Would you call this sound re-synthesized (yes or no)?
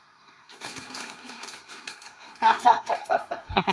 yes